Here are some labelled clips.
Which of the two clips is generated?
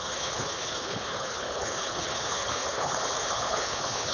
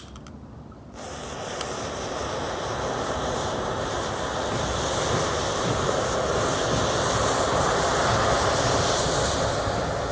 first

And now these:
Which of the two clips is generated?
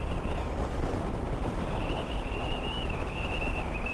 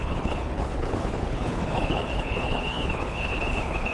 second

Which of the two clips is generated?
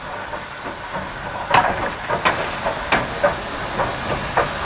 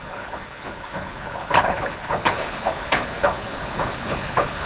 second